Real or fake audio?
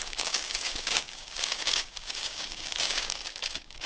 fake